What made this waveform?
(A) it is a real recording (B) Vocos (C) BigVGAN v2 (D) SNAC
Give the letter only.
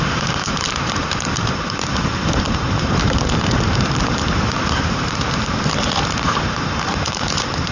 C